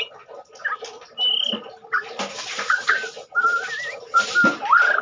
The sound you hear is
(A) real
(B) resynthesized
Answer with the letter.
A